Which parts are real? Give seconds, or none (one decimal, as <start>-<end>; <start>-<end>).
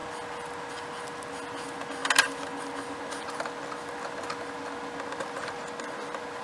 0.0-6.4